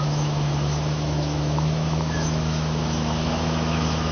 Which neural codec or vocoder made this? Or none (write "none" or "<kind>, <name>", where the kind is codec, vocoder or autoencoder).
autoencoder, DAC-VAE